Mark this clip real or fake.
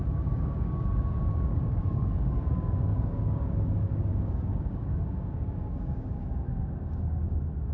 fake